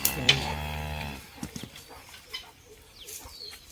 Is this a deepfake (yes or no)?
yes